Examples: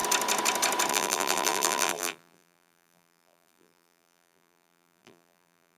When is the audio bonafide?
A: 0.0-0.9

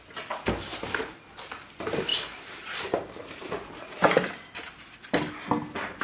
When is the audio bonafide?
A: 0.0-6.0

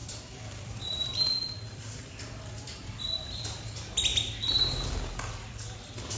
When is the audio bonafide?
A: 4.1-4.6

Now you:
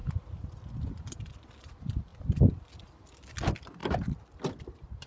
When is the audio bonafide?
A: 0.0-5.1